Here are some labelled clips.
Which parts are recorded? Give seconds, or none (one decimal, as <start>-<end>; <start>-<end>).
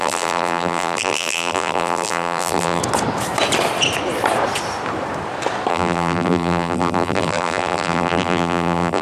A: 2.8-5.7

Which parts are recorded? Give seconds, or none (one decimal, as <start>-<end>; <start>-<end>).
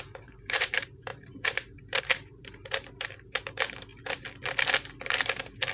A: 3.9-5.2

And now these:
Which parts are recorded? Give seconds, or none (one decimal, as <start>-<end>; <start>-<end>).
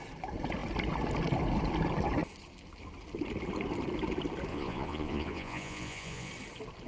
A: 0.0-4.5; 6.3-6.9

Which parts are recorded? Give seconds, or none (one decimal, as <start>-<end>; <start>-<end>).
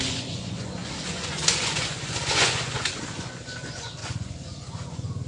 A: none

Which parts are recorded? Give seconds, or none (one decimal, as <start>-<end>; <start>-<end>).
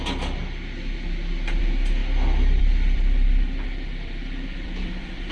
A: 0.4-1.6; 2.0-2.6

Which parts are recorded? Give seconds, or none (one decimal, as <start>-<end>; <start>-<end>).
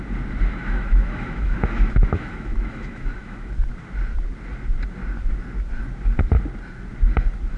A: 0.0-0.6; 3.5-7.6